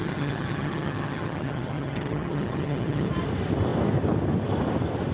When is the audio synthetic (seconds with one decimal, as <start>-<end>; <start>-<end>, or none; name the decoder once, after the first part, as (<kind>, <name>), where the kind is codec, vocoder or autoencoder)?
0.0-3.1 (vocoder, HiFi-GAN)